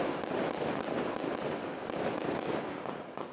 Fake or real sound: real